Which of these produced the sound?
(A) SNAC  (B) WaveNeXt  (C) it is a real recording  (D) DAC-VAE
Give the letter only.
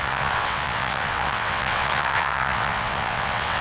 B